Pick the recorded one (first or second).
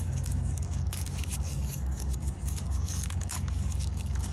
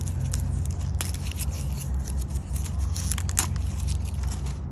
second